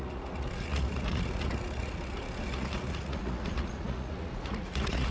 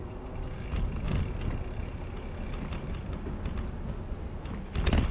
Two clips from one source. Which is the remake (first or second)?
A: first